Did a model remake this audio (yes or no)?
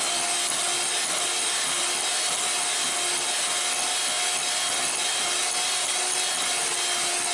no